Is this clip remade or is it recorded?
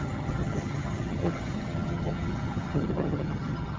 remade